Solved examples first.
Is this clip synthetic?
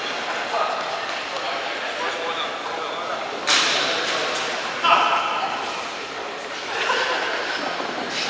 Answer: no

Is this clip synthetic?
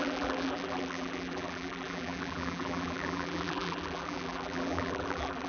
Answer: yes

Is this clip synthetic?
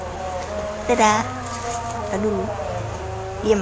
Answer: no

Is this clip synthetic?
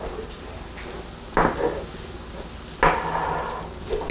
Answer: no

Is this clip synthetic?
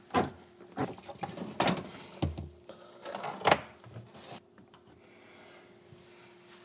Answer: no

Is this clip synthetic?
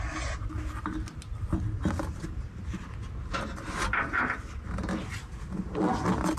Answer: no